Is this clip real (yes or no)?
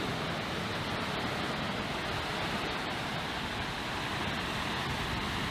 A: yes